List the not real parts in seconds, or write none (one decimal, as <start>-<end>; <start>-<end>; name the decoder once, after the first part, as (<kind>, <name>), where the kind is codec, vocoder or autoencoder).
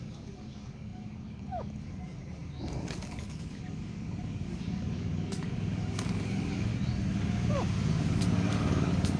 0.0-6.7 (codec, DAC); 7.9-9.2